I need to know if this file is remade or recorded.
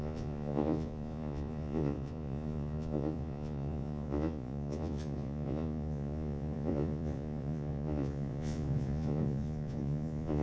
remade